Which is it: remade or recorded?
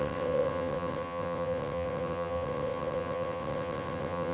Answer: remade